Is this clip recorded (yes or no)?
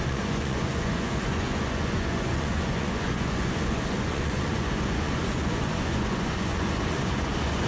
no